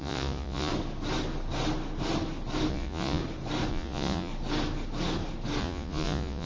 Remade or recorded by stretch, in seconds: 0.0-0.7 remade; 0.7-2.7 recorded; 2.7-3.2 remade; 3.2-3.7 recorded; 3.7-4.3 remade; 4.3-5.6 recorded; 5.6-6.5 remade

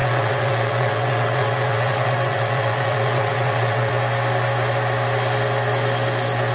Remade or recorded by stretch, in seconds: 0.0-3.9 remade; 3.9-6.5 recorded

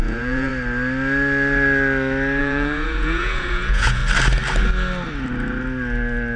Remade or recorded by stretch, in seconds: 0.0-0.5 remade; 0.5-2.4 recorded; 2.4-4.0 remade; 4.0-6.4 recorded

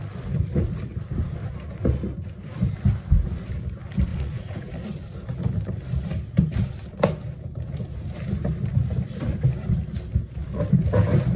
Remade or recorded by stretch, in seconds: 0.0-4.1 recorded; 4.1-4.7 remade; 4.7-11.4 recorded

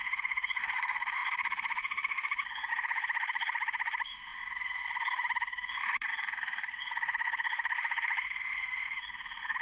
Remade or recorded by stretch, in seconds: 0.0-9.6 remade

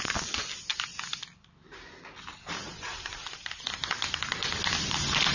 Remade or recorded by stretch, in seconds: 0.0-5.3 recorded

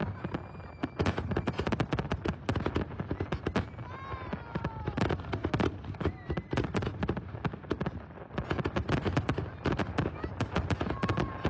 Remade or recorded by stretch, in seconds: 0.0-11.5 recorded

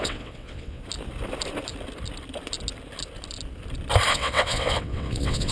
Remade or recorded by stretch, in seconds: 0.0-0.8 remade; 0.8-4.1 recorded; 4.1-5.5 remade